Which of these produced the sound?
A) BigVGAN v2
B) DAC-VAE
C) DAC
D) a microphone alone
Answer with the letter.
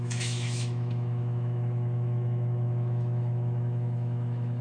B